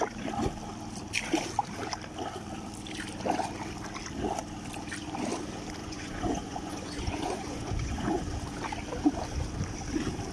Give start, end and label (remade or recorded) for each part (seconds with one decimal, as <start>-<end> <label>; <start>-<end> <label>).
0.0-5.8 recorded; 5.8-8.2 remade; 8.2-10.3 recorded